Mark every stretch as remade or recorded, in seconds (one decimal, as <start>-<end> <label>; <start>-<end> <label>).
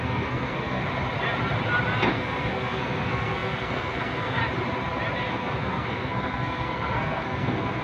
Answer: 0.0-0.8 remade; 0.8-2.1 recorded; 2.1-4.4 remade; 4.4-5.3 recorded; 5.3-7.8 remade